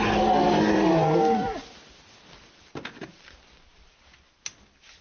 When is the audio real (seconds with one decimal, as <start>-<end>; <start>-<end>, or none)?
0.0-5.0